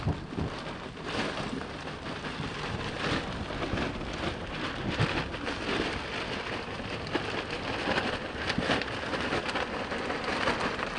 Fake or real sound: real